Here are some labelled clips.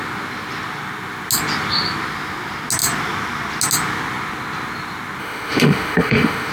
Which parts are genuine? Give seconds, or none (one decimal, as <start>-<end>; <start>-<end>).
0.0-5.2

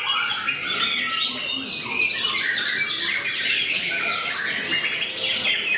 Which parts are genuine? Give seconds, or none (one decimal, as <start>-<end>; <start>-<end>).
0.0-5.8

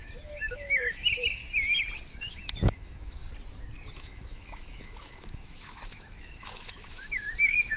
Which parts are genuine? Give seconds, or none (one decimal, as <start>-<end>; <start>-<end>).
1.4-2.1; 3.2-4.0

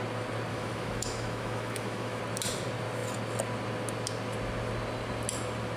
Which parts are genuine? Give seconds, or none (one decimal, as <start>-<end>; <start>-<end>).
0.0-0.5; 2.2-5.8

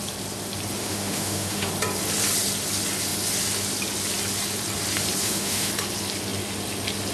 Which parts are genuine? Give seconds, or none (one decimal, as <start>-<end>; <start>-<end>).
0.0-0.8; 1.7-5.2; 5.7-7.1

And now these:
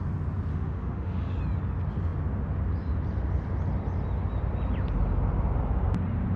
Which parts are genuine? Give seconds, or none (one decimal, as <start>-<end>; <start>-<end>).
0.0-0.5; 1.4-6.4

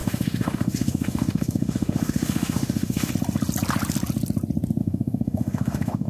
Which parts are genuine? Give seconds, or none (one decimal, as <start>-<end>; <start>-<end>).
3.1-4.8